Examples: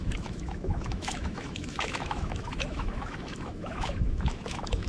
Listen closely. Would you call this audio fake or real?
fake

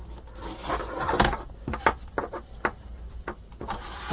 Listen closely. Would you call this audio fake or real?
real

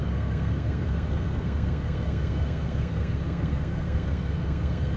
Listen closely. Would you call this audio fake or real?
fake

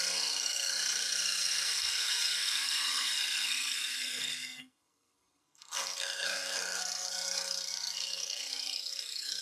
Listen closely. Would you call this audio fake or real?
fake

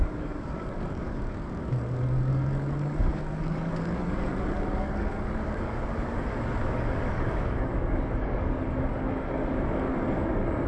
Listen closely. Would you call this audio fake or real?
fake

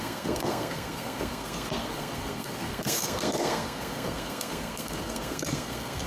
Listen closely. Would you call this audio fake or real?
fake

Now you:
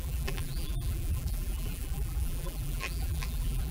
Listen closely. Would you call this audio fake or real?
fake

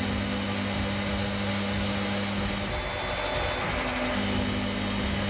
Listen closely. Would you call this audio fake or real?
real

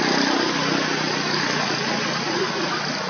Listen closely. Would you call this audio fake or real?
real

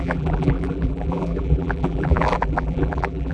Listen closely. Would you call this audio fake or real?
fake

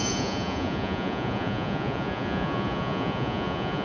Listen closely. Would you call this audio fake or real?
fake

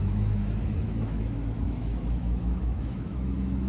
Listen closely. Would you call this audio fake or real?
fake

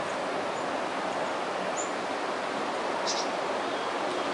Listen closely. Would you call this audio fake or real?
real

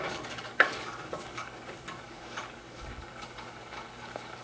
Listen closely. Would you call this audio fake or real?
fake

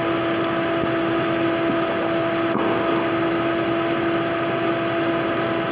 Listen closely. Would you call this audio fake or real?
real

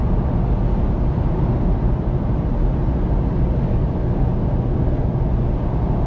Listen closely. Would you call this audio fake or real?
real